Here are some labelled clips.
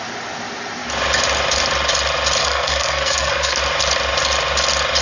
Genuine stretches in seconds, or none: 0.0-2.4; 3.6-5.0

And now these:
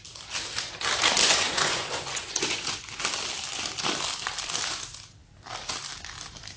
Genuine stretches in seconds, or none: 0.0-1.2; 2.8-6.6

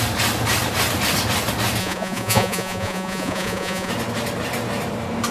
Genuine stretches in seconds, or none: 0.0-1.8; 3.9-5.3

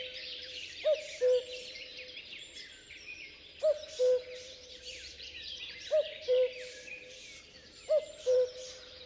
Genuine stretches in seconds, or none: none

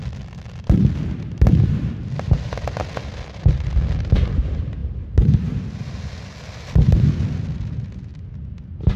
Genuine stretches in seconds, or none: 0.0-9.0